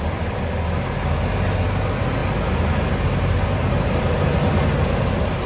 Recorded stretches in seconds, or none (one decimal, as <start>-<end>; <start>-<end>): 0.0-5.5